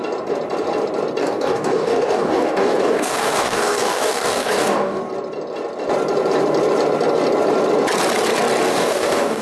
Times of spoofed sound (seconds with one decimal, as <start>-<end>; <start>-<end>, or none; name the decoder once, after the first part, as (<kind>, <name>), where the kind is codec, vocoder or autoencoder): 1.2-5.0 (codec, DAC); 8.7-9.4